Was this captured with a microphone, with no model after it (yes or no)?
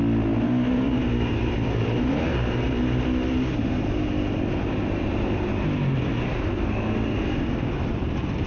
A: yes